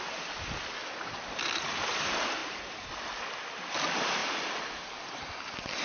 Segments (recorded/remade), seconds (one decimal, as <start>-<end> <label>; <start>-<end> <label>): 0.0-2.4 recorded; 2.4-2.9 remade; 2.9-5.8 recorded